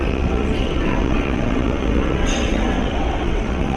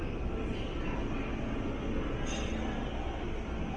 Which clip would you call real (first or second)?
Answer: second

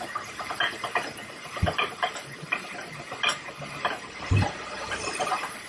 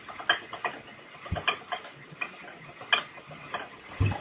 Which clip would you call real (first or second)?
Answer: second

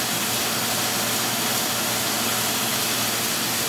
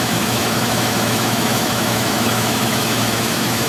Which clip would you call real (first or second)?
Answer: first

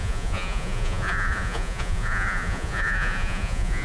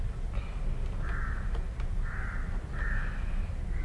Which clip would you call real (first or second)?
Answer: second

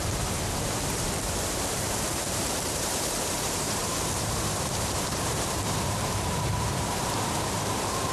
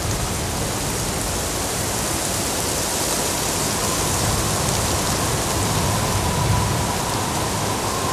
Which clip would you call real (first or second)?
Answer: second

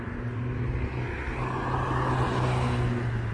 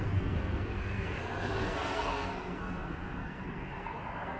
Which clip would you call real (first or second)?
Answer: first